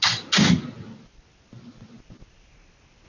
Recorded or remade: recorded